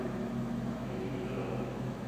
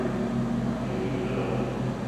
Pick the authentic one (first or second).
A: second